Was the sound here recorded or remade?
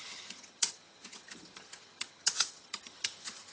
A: remade